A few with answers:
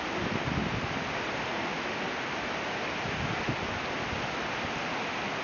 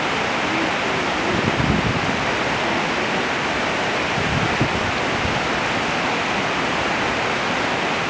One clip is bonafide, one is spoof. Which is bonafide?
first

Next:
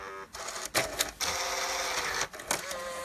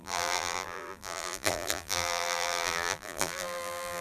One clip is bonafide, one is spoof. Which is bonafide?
first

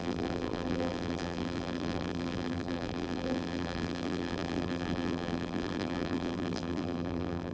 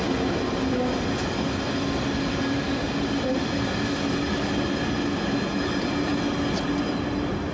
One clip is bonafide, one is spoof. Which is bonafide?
second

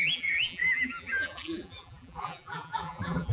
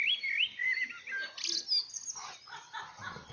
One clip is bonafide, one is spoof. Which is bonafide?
second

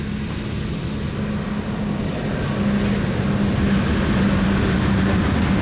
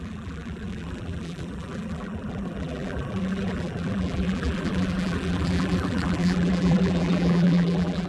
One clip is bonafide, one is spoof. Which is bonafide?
first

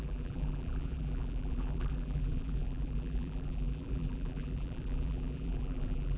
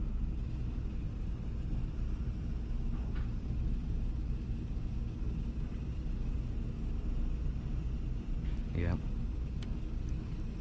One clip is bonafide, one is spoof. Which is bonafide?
second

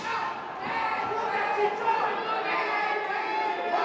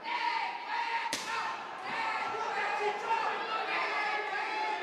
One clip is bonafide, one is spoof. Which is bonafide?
first